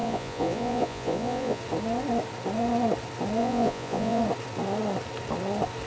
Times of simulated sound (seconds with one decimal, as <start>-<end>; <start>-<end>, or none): 0.0-1.6; 3.4-4.2